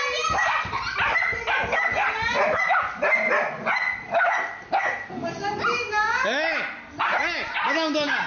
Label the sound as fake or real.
real